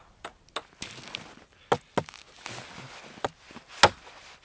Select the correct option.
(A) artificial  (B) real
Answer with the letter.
B